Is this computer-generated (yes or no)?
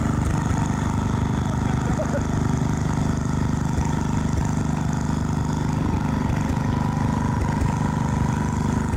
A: no